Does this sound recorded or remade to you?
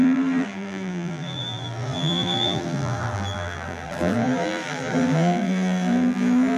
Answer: remade